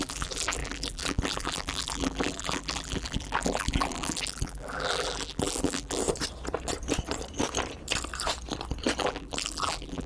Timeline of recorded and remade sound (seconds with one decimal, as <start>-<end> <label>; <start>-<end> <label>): 0.0-6.0 remade; 6.0-9.0 recorded; 9.0-10.1 remade